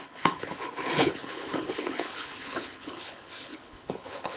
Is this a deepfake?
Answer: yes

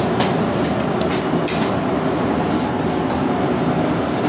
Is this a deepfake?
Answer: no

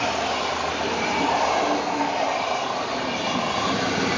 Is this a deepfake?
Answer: no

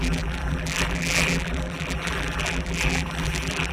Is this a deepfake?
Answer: yes